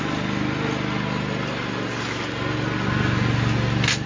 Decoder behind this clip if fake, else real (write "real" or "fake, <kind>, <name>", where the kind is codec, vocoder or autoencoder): real